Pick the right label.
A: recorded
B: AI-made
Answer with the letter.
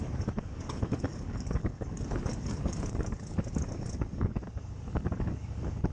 B